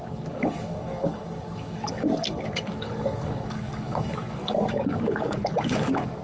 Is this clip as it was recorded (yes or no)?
no